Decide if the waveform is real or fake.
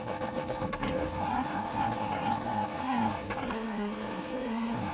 fake